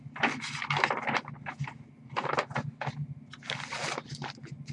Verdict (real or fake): real